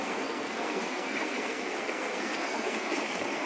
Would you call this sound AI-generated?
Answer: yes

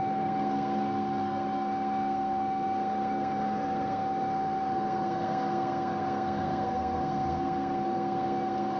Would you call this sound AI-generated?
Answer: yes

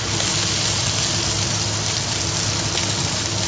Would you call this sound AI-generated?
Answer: no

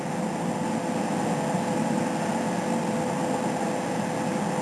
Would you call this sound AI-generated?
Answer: no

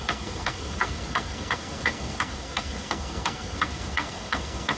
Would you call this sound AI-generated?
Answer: yes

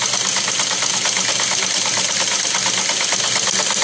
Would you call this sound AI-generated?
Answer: no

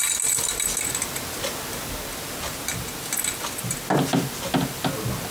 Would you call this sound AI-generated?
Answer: no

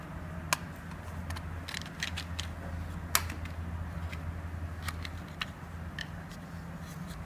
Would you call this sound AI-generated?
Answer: no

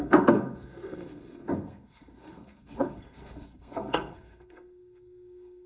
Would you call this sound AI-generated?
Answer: yes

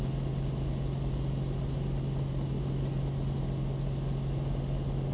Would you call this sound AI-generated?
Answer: no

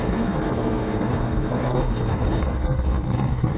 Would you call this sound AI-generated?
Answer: yes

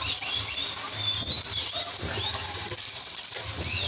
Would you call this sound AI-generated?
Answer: no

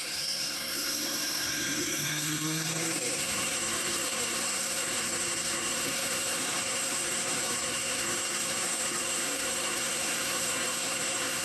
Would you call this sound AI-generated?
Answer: yes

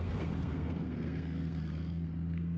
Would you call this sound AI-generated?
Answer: yes